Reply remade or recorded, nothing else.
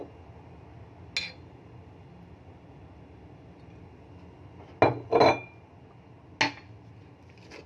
recorded